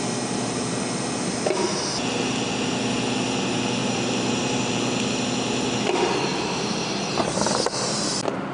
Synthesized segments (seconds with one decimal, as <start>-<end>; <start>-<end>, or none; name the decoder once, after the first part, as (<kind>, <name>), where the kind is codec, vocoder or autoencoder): 3.8-4.7 (vocoder, BigVGAN v2); 6.3-7.2